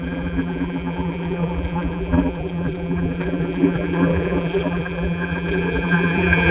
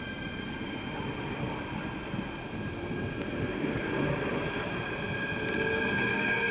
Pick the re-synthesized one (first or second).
first